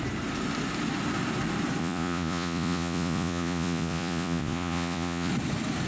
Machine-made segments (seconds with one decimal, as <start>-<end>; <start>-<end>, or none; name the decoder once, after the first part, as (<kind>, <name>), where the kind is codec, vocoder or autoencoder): 1.8-5.3 (vocoder, Vocos)